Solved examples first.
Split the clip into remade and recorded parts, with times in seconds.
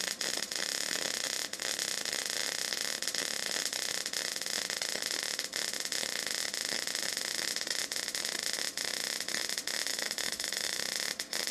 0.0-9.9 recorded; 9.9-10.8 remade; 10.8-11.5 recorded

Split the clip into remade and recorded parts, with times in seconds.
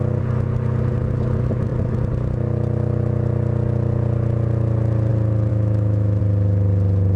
0.0-5.5 recorded; 5.5-6.2 remade; 6.2-7.2 recorded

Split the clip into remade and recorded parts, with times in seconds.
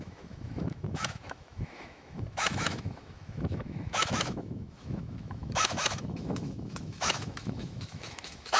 0.0-8.6 remade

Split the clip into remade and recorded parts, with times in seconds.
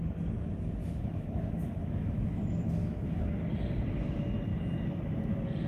0.0-0.8 recorded; 0.8-3.3 remade; 3.3-5.7 recorded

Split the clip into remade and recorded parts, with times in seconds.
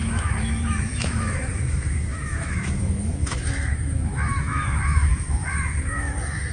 0.0-6.5 remade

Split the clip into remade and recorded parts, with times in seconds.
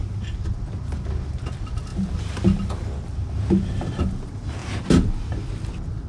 0.0-6.1 recorded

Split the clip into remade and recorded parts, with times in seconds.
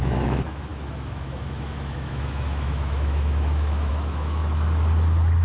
0.0-4.4 remade; 4.4-5.4 recorded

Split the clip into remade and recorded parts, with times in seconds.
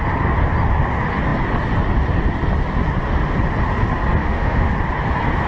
0.0-4.2 recorded; 4.2-4.7 remade; 4.7-5.5 recorded